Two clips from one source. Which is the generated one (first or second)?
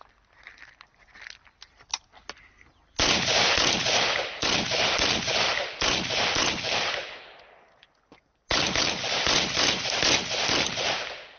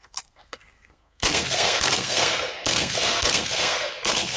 second